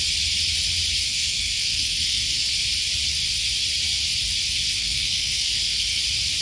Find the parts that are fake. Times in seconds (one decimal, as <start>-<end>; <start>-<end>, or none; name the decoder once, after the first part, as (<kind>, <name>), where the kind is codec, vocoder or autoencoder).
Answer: 1.1-2.5 (codec, SNAC); 4.8-6.0